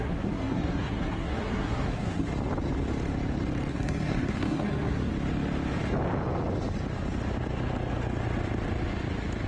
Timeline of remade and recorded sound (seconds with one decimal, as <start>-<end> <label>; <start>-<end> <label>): 0.0-2.3 remade; 2.3-3.7 recorded; 3.7-5.1 remade; 5.1-9.5 recorded